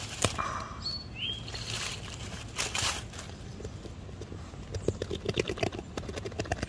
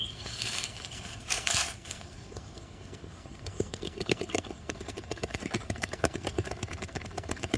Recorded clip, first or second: first